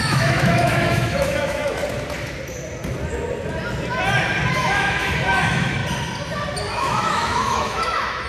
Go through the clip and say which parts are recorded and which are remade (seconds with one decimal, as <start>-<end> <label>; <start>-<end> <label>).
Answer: 0.0-1.8 remade; 1.8-4.5 recorded; 4.5-5.8 remade; 5.8-6.8 recorded; 6.8-8.3 remade